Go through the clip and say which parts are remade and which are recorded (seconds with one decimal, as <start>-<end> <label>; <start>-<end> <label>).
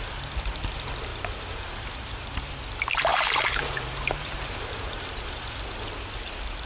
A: 0.0-1.1 recorded; 1.1-2.4 remade; 2.4-3.1 recorded; 3.1-5.4 remade; 5.4-6.7 recorded